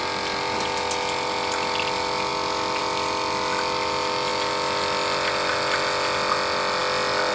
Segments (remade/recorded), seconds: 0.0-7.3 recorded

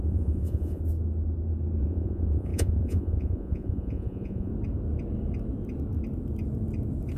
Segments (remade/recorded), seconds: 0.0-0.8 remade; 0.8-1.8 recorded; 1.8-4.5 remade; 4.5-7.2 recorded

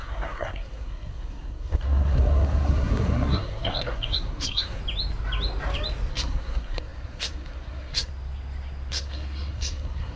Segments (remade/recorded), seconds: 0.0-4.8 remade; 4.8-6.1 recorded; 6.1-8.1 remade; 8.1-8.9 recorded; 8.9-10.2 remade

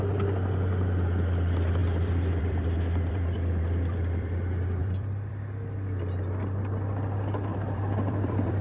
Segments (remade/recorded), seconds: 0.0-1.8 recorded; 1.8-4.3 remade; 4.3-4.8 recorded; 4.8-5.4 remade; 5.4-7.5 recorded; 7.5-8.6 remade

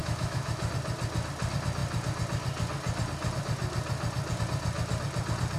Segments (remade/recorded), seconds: 0.0-0.7 remade; 0.7-5.6 recorded

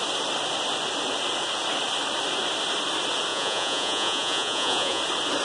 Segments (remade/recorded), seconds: 0.0-3.3 recorded; 3.3-5.0 remade; 5.0-5.4 recorded